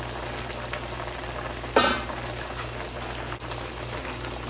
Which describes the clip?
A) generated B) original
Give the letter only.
B